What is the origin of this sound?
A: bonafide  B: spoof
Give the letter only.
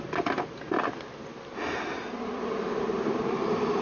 A